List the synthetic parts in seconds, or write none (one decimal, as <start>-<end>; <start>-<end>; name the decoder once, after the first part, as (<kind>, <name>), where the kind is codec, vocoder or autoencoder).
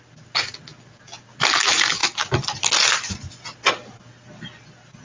none